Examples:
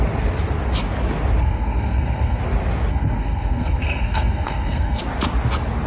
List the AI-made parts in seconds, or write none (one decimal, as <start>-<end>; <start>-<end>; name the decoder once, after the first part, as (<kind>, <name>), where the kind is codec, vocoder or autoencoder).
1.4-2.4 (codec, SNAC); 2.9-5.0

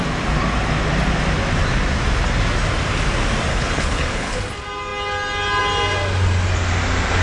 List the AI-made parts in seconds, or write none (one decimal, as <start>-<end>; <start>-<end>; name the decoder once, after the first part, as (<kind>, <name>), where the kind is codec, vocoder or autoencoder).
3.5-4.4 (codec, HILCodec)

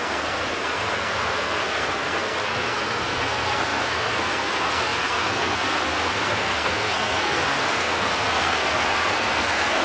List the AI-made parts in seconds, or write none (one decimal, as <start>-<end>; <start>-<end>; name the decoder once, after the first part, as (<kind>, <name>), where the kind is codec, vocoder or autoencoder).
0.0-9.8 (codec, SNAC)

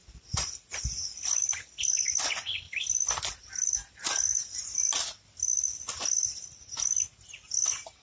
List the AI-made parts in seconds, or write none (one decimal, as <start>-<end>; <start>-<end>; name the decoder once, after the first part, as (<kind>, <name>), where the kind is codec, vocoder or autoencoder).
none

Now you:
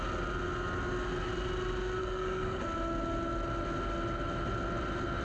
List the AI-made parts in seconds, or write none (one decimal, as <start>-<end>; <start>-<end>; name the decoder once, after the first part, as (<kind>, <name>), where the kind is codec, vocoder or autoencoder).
2.0-2.6 (codec, SNAC)

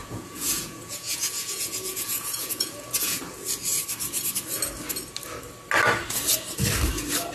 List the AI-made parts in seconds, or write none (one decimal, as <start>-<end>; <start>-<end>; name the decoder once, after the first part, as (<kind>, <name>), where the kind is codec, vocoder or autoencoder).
0.0-3.2 (vocoder, Vocos)

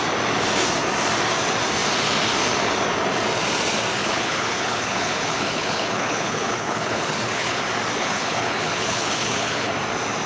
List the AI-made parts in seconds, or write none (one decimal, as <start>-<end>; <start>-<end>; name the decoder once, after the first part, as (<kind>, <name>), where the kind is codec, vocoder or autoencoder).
4.0-7.6 (codec, HILCodec); 8.0-9.7

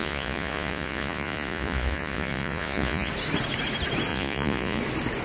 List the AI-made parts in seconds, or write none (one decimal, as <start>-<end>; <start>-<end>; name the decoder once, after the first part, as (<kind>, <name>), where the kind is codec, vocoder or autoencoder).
0.0-3.1 (vocoder, Vocos); 4.1-4.8